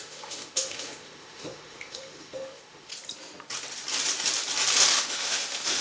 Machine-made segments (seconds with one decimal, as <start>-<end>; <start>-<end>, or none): 0.0-2.9; 4.9-5.8